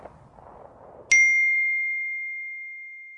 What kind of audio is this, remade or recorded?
recorded